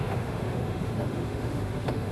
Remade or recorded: remade